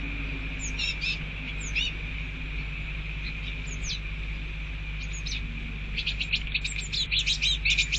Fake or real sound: real